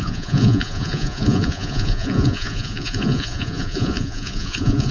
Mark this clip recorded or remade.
remade